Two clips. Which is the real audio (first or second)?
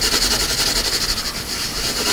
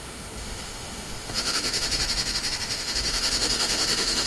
first